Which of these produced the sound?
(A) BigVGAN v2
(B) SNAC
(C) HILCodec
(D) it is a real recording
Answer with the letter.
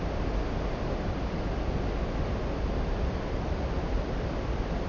D